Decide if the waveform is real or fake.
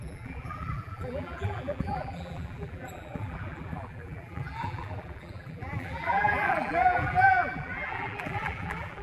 fake